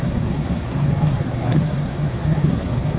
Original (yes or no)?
no